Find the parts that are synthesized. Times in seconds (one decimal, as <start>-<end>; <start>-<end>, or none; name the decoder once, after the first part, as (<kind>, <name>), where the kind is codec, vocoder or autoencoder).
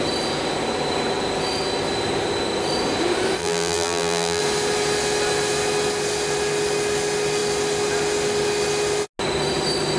3.4-4.4 (vocoder, BigVGAN v2)